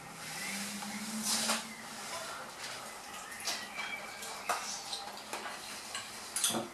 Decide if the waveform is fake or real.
real